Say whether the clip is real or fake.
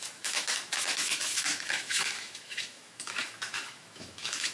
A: fake